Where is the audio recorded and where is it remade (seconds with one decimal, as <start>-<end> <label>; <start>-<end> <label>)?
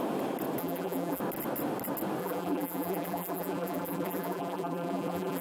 0.0-0.6 recorded; 0.6-1.2 remade; 1.2-2.2 recorded; 2.2-5.4 remade